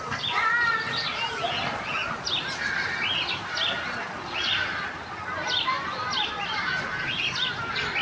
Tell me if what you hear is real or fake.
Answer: real